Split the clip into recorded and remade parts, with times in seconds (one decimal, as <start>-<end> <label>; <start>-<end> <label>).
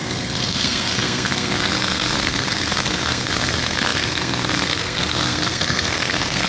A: 0.0-6.5 remade